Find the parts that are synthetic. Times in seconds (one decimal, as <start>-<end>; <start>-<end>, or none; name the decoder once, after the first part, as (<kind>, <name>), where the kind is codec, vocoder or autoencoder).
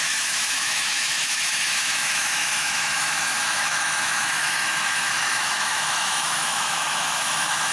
0.0-7.7 (autoencoder, DAC-VAE)